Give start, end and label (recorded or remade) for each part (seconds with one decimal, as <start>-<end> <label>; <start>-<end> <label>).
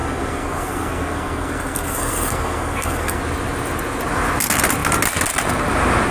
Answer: 0.0-3.2 remade; 3.2-6.1 recorded